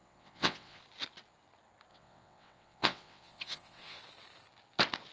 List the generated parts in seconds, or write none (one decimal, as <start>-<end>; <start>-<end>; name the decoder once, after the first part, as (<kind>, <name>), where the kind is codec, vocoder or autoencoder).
0.0-0.8 (vocoder, WaveNeXt); 1.9-4.0

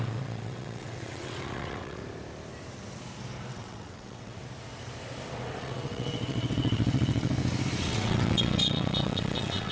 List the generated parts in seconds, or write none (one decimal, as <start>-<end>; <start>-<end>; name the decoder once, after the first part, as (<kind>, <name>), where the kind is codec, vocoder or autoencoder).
0.0-2.0 (vocoder, WaveNeXt); 3.5-4.4; 5.6-7.3; 7.8-9.7

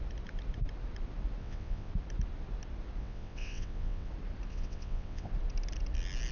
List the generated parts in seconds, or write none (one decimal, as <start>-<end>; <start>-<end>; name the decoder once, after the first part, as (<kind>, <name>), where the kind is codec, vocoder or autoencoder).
1.4-1.9 (vocoder, WaveNeXt); 3.0-4.1; 4.5-5.3